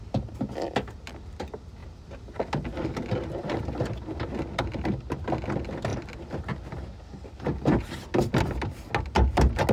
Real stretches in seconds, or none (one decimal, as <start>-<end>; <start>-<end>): 0.0-9.7